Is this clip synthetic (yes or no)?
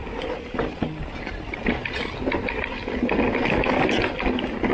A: no